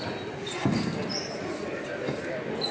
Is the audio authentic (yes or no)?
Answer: yes